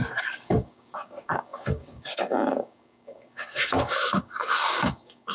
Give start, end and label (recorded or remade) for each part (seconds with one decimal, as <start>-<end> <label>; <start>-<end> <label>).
0.0-5.3 remade